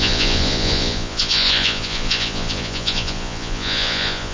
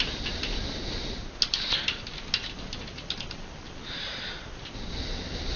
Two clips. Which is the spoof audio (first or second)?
first